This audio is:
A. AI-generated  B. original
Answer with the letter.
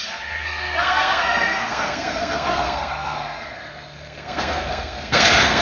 A